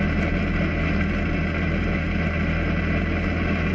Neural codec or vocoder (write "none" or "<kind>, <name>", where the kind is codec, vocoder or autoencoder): none